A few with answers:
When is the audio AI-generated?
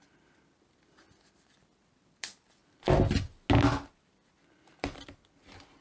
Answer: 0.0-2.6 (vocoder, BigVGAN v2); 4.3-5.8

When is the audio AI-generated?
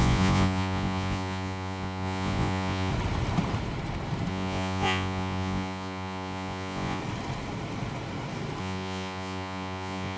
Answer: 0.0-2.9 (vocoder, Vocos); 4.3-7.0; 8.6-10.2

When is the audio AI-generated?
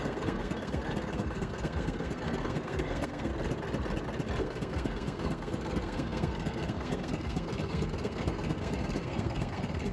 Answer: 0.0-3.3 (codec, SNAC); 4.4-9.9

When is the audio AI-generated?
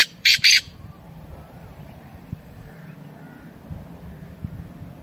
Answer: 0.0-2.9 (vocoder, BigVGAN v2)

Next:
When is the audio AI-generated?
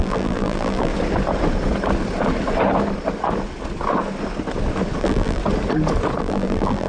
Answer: 0.0-0.9 (vocoder, BigVGAN v2); 5.0-5.4; 6.2-6.9